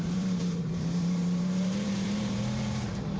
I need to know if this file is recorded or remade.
remade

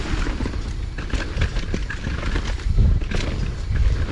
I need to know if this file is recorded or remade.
recorded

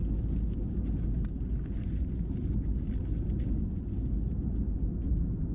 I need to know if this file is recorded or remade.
recorded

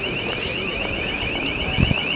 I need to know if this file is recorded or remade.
recorded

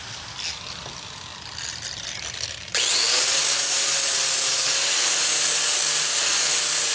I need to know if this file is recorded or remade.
recorded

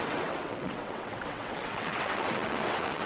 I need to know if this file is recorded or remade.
remade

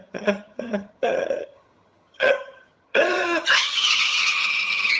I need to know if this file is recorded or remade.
remade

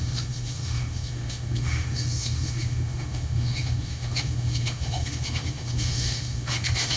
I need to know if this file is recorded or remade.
remade